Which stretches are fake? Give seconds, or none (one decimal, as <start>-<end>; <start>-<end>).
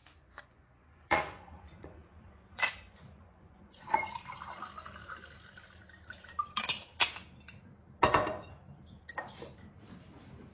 0.0-4.1